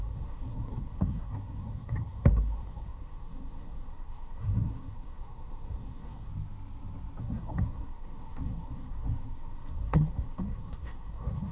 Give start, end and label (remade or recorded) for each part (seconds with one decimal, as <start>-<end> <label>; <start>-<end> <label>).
0.0-6.3 remade; 6.3-7.2 recorded; 7.2-11.5 remade